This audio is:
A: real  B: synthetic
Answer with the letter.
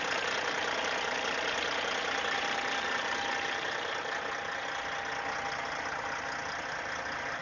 A